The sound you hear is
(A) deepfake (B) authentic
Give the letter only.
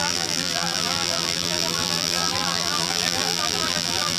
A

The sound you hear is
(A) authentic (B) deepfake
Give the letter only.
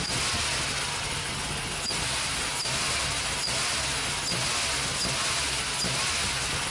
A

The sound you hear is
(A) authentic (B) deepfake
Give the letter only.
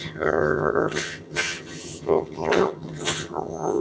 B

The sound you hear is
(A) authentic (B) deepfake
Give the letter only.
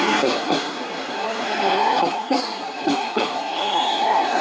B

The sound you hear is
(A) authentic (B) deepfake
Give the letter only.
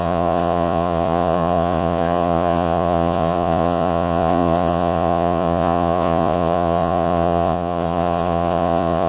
B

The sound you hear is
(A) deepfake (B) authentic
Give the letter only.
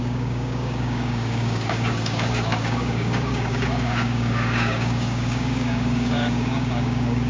A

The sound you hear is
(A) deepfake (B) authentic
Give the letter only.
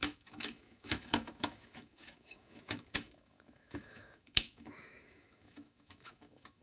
A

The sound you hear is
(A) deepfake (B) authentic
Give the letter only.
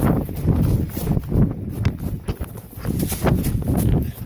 B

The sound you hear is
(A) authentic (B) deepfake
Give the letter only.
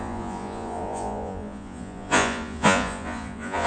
B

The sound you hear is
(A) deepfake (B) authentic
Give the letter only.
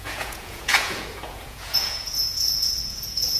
A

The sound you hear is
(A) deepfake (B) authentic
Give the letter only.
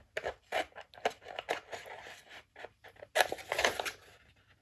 B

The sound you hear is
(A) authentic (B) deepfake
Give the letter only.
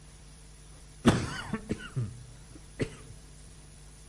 B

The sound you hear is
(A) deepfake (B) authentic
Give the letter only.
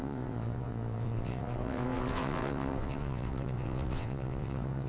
A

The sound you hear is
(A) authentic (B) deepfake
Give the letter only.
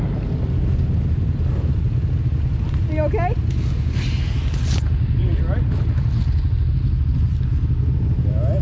A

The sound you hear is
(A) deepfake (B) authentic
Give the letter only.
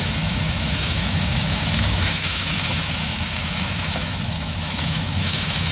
A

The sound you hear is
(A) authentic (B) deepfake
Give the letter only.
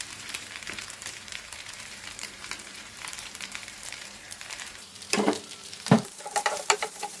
B